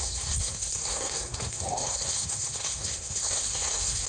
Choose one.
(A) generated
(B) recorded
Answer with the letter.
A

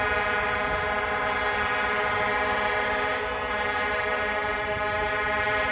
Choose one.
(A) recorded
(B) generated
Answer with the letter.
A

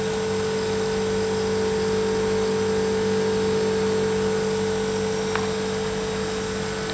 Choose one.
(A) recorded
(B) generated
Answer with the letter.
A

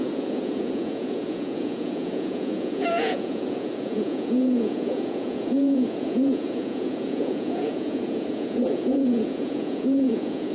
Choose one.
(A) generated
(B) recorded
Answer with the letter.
A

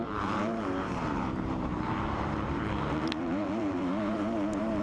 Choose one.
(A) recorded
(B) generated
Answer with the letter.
B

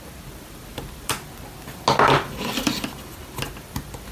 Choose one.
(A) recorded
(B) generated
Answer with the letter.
A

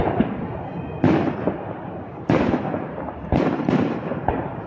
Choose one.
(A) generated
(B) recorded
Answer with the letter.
A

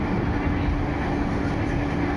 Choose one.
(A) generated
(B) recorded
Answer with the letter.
B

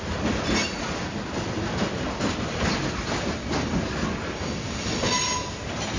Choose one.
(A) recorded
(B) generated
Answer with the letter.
A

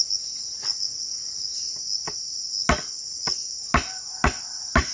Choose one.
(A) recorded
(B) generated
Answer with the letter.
A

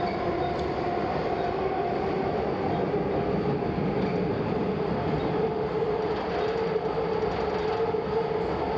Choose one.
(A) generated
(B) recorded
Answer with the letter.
B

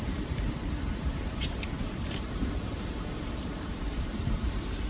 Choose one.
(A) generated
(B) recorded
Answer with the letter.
A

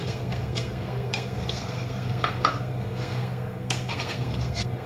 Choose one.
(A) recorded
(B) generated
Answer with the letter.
B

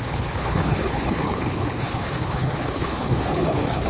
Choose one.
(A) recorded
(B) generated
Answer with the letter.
B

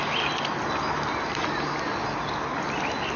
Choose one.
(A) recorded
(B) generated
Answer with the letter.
A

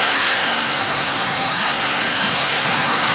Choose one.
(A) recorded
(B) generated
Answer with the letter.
B